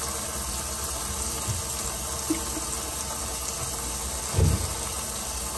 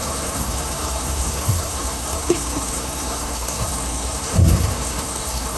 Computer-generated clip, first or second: second